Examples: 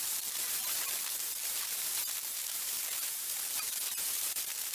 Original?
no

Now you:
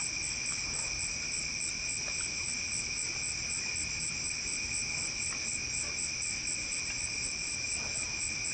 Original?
yes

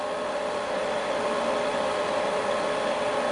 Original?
yes